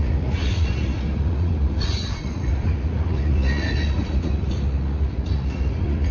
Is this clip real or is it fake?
fake